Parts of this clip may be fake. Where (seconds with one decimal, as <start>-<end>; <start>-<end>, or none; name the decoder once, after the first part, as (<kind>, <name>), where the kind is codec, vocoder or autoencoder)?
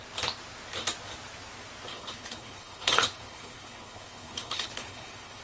1.9-5.4 (codec, HILCodec)